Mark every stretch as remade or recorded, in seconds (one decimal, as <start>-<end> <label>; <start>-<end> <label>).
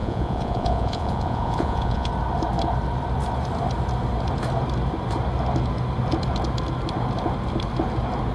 0.0-2.1 remade; 2.1-8.3 recorded